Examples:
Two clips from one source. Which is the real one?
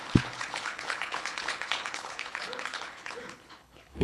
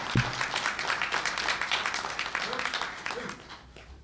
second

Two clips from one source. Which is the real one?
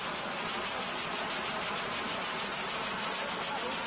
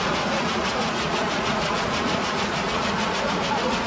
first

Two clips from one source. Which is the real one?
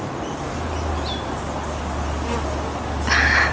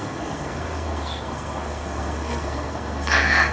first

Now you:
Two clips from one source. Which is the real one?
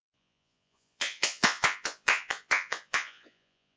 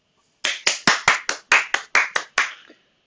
second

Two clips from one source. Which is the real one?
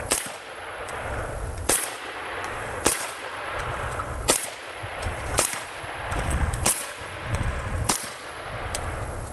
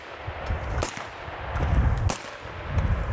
second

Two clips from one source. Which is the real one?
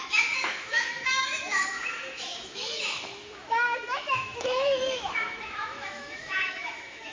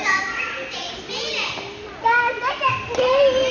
second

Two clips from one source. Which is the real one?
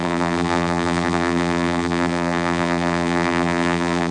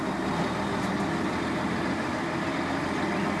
second